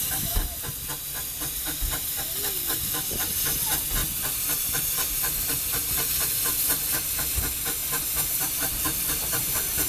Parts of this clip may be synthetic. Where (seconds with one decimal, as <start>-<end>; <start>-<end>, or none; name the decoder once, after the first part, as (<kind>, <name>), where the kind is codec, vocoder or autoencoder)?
none